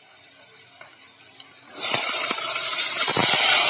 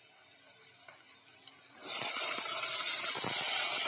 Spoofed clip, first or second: first